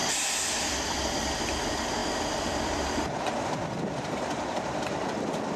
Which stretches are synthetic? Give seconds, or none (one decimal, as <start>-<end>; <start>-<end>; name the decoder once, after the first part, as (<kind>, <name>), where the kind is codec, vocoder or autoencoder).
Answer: none